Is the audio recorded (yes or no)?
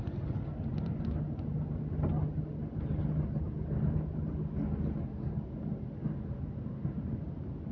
yes